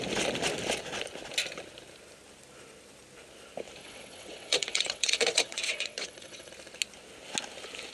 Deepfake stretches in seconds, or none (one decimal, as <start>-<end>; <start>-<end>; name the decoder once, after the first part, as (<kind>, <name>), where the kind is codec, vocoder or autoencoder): 3.8-6.5 (vocoder, WaveNeXt)